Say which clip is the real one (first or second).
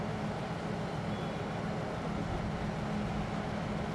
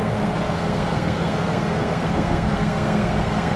first